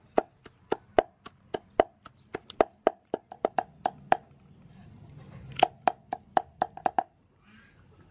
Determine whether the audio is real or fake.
real